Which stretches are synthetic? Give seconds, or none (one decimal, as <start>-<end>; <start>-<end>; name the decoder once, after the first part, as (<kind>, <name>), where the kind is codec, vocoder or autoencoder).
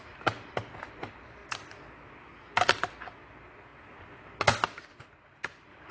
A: 0.0-1.4 (vocoder, BigVGAN v2); 3.2-3.7; 5.0-5.9